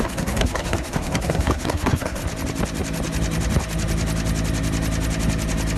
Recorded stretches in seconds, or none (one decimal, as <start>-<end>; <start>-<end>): 2.2-5.8